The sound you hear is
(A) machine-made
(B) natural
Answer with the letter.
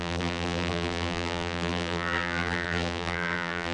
A